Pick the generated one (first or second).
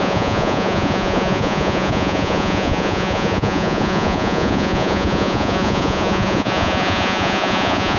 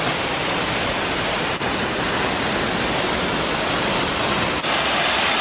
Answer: first